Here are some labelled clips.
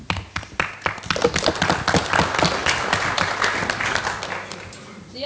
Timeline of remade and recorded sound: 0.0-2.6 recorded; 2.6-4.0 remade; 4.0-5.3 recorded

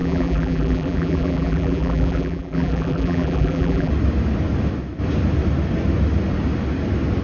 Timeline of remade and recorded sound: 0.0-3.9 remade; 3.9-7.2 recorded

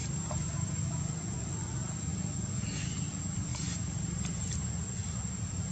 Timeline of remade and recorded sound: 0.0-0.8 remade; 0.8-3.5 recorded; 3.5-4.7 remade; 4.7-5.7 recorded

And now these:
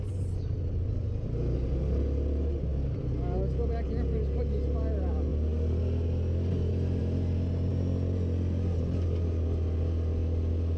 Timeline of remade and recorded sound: 0.0-10.8 recorded

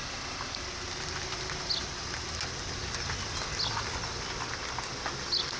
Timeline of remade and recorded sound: 0.0-5.6 recorded

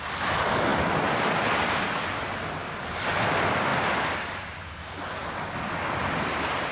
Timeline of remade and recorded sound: 0.0-2.6 recorded; 2.6-3.3 remade; 3.3-3.7 recorded; 3.7-4.3 remade; 4.3-6.7 recorded

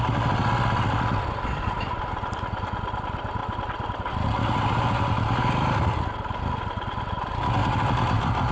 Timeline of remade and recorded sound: 0.0-7.6 recorded; 7.6-8.5 remade

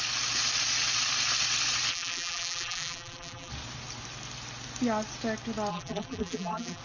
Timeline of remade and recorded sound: 0.0-1.9 recorded; 1.9-3.5 remade; 3.5-5.7 recorded; 5.7-6.8 remade